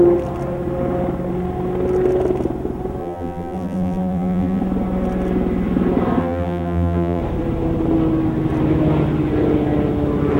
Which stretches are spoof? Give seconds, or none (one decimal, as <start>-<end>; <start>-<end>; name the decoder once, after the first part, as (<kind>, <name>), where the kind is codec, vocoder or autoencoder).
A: 3.0-4.6 (vocoder, BigVGAN v2); 6.2-7.2